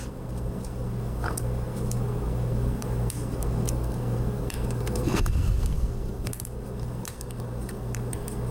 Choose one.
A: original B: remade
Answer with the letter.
B